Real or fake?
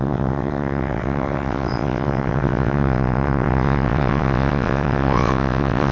fake